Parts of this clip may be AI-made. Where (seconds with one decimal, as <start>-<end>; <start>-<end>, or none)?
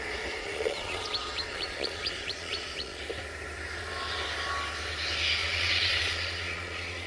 0.4-3.0; 5.4-7.1